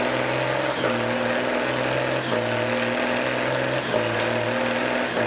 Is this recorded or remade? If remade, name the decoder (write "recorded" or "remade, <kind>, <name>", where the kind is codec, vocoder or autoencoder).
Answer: recorded